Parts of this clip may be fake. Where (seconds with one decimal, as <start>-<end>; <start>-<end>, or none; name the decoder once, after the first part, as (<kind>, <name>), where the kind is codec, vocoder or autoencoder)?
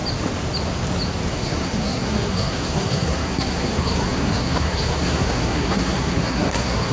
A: 1.3-6.9 (codec, SNAC)